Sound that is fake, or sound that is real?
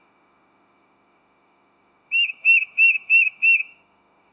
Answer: fake